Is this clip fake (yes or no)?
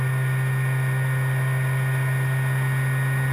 no